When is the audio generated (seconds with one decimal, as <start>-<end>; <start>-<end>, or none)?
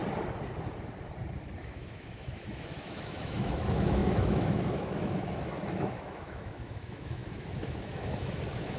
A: 1.6-8.8